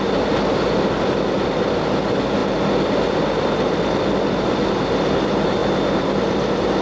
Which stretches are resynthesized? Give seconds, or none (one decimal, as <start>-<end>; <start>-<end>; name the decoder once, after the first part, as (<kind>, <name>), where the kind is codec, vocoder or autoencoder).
5.6-6.1 (vocoder, BigVGAN v2)